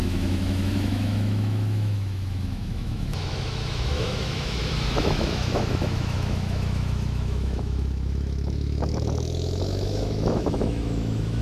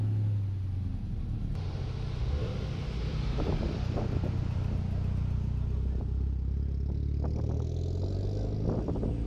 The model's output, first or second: first